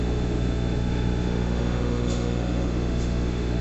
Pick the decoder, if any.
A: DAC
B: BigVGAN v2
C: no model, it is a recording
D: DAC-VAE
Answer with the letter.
D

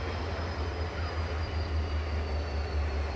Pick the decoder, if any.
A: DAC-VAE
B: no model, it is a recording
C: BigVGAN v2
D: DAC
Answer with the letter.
B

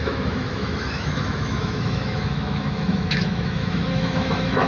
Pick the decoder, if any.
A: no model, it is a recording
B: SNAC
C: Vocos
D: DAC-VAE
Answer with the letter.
D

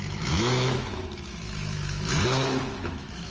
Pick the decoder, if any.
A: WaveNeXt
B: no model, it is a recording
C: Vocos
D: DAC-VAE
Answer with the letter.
D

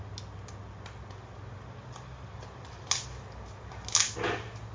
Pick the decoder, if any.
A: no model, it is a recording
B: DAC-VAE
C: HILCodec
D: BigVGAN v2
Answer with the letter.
A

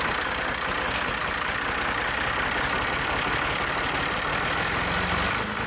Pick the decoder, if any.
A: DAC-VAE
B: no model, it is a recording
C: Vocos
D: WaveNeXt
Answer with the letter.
B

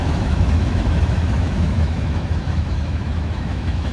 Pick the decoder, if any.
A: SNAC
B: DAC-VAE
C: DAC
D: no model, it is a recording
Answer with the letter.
B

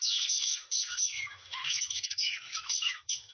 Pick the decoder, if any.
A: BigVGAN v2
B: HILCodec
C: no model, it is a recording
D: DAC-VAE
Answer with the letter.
D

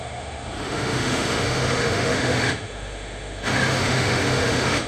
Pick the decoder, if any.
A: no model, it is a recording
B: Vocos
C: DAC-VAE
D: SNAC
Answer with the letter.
C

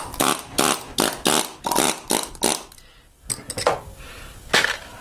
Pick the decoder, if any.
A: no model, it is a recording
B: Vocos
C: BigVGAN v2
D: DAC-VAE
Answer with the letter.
A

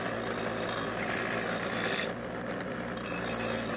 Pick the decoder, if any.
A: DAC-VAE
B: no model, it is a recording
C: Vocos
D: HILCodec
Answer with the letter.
B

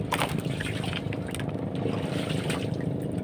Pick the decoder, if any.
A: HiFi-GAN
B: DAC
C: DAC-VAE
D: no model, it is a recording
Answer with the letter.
D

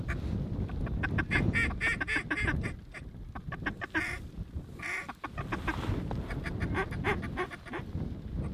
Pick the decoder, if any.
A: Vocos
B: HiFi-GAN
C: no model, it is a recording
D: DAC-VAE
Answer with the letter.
C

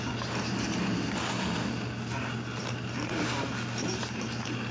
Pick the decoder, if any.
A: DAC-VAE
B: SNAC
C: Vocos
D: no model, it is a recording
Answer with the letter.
D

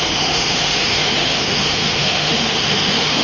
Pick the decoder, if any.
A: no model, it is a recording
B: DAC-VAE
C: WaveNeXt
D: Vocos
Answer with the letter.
B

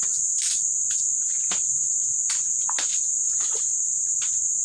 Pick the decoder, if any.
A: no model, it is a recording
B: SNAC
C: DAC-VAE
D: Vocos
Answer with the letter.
A